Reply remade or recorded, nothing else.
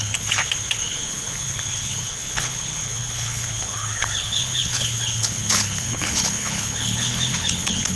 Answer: remade